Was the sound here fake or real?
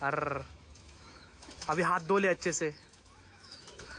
fake